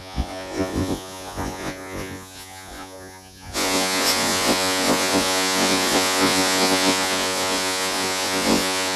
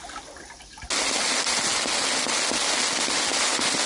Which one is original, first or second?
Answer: second